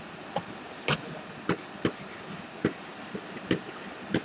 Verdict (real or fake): real